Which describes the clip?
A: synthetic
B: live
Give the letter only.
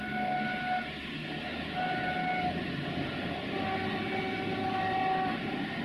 B